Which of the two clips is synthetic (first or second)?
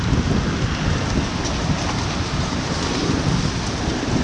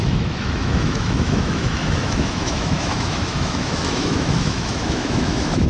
second